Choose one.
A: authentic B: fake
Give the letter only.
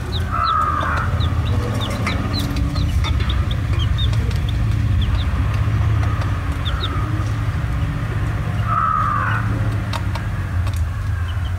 A